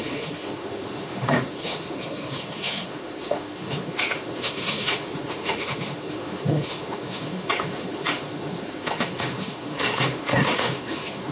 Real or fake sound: fake